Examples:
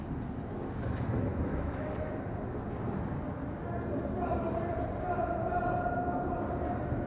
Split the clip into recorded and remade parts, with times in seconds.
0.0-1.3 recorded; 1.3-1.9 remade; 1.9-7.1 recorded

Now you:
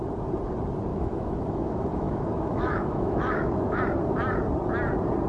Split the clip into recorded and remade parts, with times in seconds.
0.0-0.9 recorded; 0.9-3.8 remade; 3.8-5.3 recorded

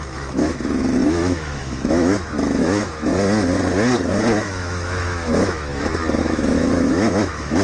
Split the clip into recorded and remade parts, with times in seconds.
0.0-3.1 remade; 3.1-4.4 recorded; 4.4-5.7 remade; 5.7-6.2 recorded; 6.2-7.6 remade

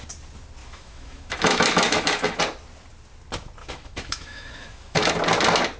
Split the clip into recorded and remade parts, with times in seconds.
0.0-0.6 recorded; 0.6-2.4 remade; 2.4-3.6 recorded; 3.6-5.1 remade; 5.1-5.8 recorded

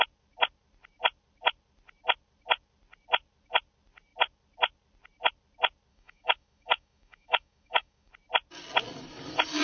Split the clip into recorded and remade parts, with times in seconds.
0.0-5.9 recorded; 5.9-8.1 remade; 8.1-9.6 recorded

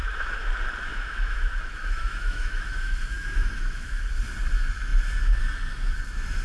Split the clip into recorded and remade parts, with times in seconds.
0.0-0.5 remade; 0.5-0.9 recorded; 0.9-4.0 remade; 4.0-6.4 recorded

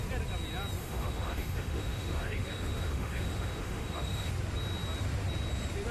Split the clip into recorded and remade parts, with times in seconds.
0.0-0.8 recorded; 0.8-4.3 remade; 4.3-5.9 recorded

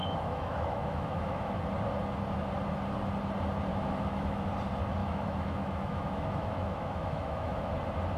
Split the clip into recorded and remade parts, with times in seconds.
0.0-1.6 remade; 1.6-3.7 recorded; 3.7-4.5 remade; 4.5-5.0 recorded; 5.0-7.7 remade; 7.7-8.2 recorded